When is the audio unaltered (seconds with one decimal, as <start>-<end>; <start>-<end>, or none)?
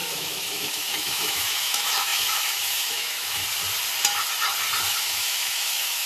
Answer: 3.4-5.0